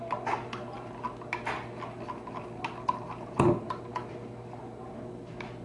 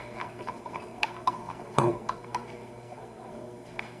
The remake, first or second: second